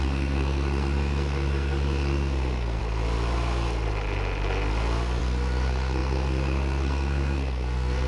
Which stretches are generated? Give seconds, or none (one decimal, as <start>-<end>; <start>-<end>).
0.0-2.8; 5.2-8.1